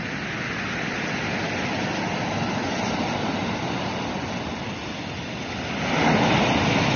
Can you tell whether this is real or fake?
real